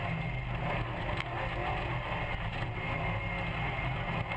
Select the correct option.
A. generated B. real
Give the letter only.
B